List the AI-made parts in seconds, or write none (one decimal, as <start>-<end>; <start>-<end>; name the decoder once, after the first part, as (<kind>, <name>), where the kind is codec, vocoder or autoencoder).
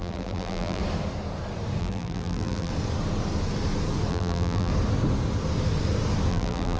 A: 0.0-0.8 (vocoder, BigVGAN v2); 1.8-2.7; 4.1-4.7; 6.3-6.8